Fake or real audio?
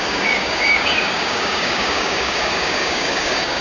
fake